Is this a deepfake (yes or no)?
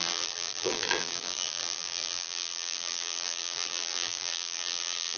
yes